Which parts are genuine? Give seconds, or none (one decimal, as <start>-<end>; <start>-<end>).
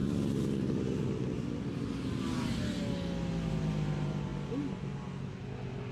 0.0-5.9